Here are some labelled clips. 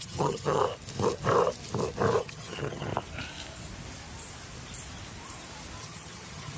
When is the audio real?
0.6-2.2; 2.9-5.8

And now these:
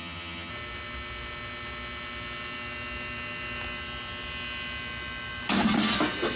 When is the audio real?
0.5-6.4

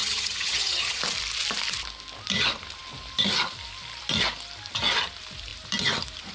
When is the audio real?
1.0-6.3